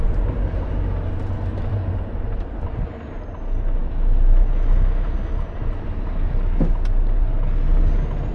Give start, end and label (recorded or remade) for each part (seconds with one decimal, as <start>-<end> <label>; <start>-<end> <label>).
0.0-8.3 recorded

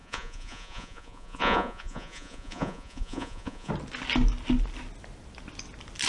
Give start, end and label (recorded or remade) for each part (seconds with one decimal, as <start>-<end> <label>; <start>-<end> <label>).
0.0-3.7 remade; 3.7-6.1 recorded